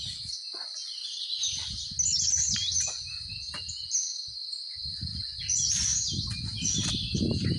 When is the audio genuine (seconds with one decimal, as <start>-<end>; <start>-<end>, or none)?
0.0-7.6